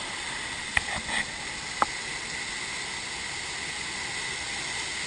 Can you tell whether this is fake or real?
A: real